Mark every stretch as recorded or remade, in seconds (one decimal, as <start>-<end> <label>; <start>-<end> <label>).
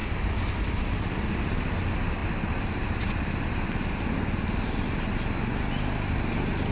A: 0.0-6.7 recorded